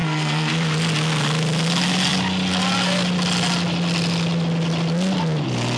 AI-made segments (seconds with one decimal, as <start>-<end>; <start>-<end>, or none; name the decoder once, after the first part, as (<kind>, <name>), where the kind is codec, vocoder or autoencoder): 0.0-0.5 (codec, SNAC)